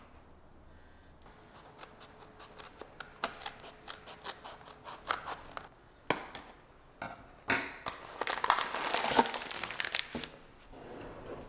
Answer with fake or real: real